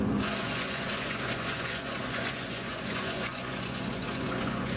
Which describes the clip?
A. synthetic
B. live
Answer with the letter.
A